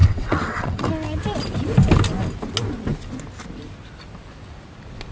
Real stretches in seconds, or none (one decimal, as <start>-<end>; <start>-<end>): 0.9-5.1